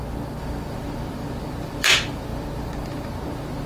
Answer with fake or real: fake